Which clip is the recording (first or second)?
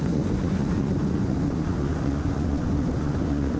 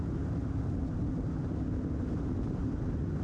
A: second